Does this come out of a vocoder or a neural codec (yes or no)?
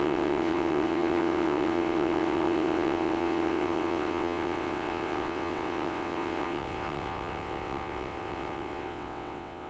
yes